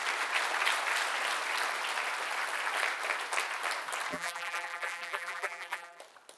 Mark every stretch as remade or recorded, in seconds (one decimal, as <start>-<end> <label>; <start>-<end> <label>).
0.0-4.1 recorded; 4.1-6.0 remade; 6.0-6.4 recorded